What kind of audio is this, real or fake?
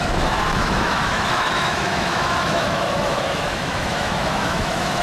fake